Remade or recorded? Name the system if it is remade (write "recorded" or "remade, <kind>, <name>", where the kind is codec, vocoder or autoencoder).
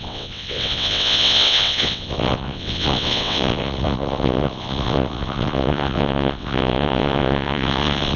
remade, vocoder, WaveNeXt